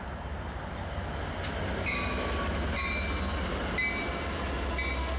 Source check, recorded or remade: recorded